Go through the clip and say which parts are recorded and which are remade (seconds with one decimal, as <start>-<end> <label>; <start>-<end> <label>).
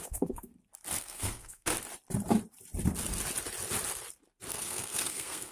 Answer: 0.0-0.5 remade; 0.5-1.0 recorded; 1.0-1.7 remade; 1.7-4.5 recorded; 4.5-5.5 remade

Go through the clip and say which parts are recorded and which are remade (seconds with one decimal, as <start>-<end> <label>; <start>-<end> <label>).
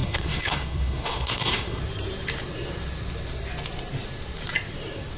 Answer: 0.0-1.8 remade; 1.8-5.2 recorded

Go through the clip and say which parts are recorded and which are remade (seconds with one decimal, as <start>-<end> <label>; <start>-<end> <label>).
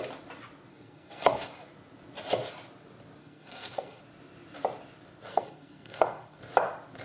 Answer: 0.0-0.7 recorded; 0.7-1.5 remade; 1.5-3.2 recorded; 3.2-4.0 remade; 4.0-5.3 recorded; 5.3-6.4 remade; 6.4-7.0 recorded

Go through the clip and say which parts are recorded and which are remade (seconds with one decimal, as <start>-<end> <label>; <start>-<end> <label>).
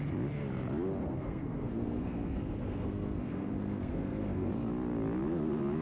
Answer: 0.0-1.0 recorded; 1.0-4.5 remade; 4.5-5.8 recorded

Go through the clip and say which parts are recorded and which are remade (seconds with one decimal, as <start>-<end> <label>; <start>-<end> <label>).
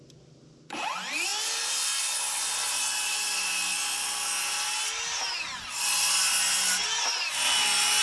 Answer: 0.0-8.0 recorded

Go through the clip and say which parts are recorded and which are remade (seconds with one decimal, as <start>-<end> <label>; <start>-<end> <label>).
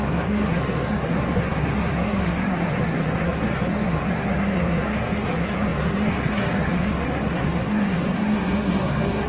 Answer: 0.0-9.3 remade